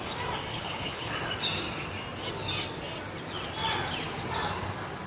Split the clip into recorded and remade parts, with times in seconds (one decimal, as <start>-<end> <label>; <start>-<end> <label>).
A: 0.0-0.5 recorded; 0.5-1.1 remade; 1.1-5.1 recorded